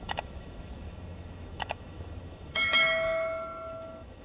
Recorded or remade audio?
remade